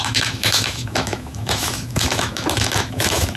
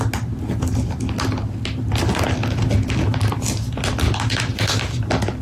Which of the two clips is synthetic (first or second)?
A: first